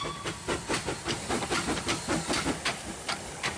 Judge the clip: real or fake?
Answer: real